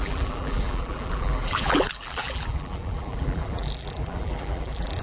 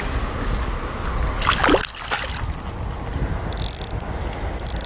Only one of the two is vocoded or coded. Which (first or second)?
first